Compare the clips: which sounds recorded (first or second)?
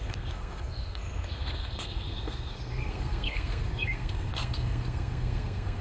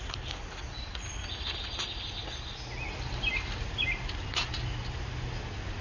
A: second